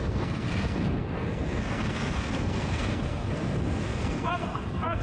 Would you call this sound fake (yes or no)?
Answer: yes